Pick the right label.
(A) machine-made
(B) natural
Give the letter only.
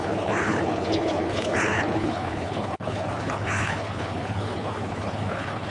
A